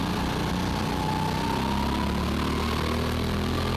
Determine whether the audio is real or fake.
real